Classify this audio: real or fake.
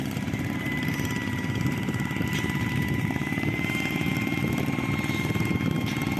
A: fake